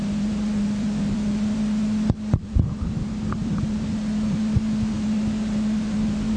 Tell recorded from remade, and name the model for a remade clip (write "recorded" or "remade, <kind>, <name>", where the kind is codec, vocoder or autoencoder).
recorded